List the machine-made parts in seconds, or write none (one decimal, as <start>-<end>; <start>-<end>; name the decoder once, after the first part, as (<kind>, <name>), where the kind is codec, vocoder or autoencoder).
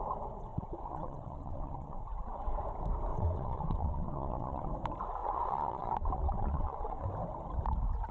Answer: 0.5-2.6 (vocoder, WaveNeXt); 3.1-4.7; 5.2-7.1